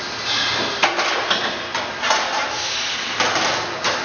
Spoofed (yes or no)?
no